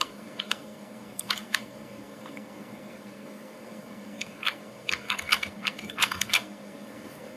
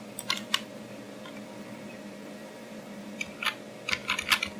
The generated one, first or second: first